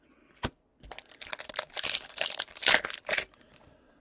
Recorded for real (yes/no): yes